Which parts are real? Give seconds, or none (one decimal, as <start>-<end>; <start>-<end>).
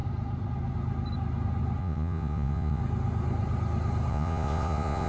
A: 0.0-1.8; 2.8-4.1